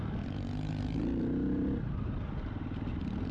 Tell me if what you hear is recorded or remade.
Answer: recorded